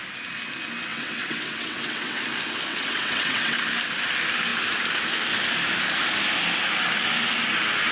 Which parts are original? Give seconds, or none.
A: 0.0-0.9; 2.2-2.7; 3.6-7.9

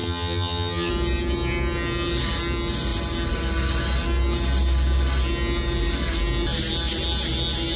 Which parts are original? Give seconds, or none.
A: 0.9-7.8

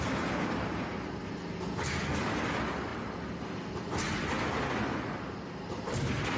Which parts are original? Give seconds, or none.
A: 0.0-6.4

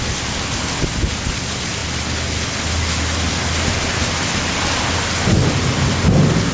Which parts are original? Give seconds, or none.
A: 0.0-6.5

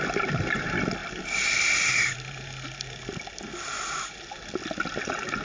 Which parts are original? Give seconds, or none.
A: 0.0-5.4